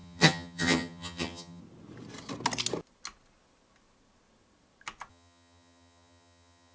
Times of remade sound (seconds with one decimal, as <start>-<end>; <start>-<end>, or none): 0.0-1.6; 5.1-6.7